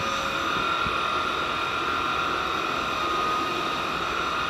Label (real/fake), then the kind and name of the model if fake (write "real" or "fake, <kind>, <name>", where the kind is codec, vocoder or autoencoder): real